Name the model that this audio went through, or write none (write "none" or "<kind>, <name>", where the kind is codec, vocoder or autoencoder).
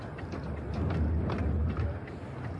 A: none